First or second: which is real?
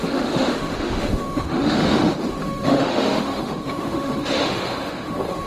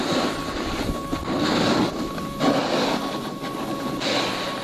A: second